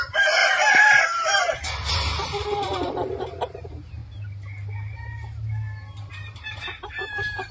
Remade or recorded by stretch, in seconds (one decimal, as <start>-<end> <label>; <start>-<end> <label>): 0.0-0.4 remade; 0.4-1.9 recorded; 1.9-4.0 remade; 4.0-6.1 recorded; 6.1-7.5 remade